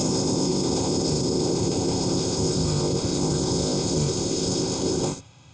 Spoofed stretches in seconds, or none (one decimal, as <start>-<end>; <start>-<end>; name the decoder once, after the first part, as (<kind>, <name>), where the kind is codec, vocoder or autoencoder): 0.0-5.5 (codec, ZipCodec)